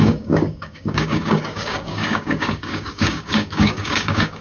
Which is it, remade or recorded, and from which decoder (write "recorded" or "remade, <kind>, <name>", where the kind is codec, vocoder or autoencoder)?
remade, codec, DAC